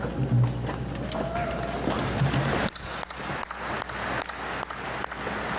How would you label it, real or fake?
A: real